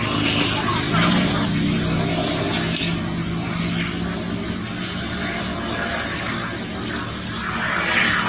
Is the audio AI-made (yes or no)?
no